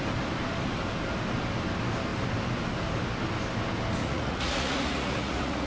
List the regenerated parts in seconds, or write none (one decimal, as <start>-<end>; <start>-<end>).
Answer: 4.0-5.7

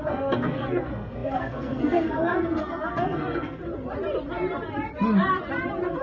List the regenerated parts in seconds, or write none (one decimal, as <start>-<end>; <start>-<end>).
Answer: 0.0-3.6

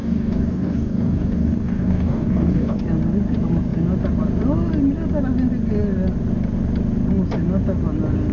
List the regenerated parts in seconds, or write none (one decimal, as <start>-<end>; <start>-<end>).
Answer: 0.0-2.8

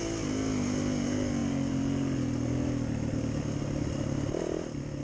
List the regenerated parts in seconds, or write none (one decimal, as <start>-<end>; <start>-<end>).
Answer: none

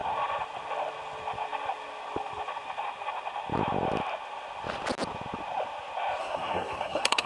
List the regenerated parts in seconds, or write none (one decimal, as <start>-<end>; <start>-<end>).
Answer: 6.2-7.3

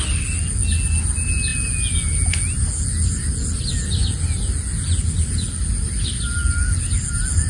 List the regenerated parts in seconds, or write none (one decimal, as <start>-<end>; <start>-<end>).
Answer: none

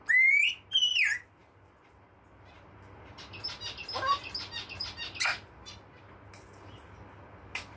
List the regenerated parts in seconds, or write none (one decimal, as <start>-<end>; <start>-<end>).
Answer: none